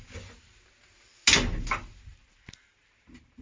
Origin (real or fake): real